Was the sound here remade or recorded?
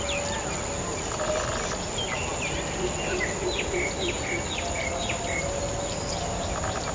recorded